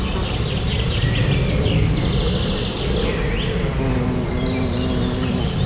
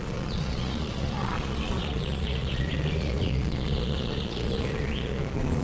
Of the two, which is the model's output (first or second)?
second